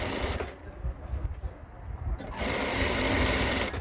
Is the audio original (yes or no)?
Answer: yes